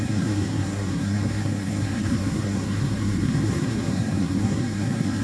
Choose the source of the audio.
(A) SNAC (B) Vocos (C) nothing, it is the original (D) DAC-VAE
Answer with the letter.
A